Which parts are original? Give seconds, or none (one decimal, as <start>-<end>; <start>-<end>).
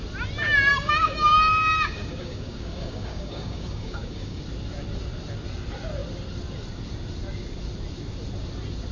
0.0-0.7; 4.4-8.9